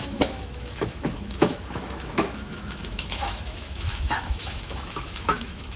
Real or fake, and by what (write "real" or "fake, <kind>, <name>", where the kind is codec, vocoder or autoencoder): fake, autoencoder, DAC-VAE